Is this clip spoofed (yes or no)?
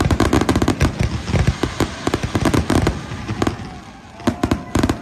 no